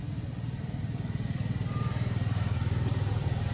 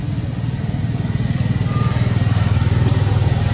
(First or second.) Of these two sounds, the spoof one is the first